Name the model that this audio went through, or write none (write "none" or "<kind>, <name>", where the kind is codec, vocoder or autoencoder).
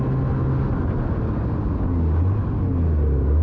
none